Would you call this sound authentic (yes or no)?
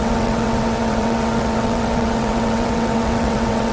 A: no